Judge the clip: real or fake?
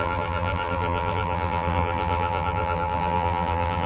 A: fake